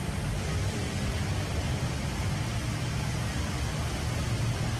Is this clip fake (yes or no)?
no